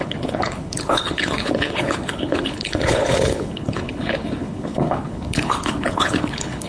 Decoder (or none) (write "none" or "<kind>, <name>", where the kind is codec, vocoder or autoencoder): codec, HILCodec